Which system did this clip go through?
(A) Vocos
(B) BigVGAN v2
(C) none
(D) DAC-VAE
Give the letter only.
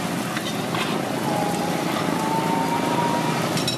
C